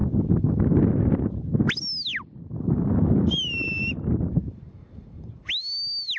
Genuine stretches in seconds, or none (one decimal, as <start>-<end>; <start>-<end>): 0.7-2.1; 3.8-4.4; 5.5-6.2